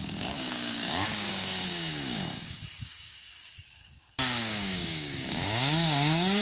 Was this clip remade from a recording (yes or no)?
yes